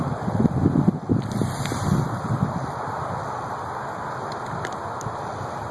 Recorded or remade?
recorded